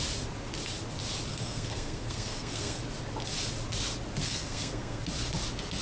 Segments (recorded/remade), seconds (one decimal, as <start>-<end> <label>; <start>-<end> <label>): 0.0-1.3 recorded; 1.3-2.8 remade; 2.8-4.2 recorded; 4.2-5.0 remade; 5.0-5.8 recorded